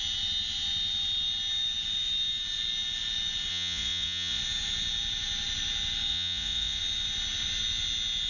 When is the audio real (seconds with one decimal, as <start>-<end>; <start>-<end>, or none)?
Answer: 0.0-3.5; 4.4-6.1; 6.8-8.3